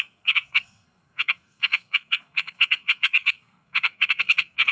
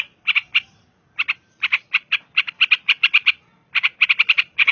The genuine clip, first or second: second